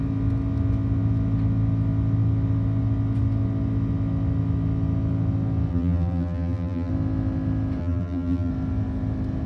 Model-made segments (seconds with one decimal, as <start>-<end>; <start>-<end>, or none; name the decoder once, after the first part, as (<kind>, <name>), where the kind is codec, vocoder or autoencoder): 5.7-6.9 (vocoder, BigVGAN v2); 7.8-8.5